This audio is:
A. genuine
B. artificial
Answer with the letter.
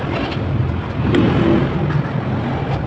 A